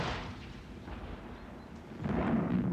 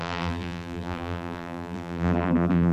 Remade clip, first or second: second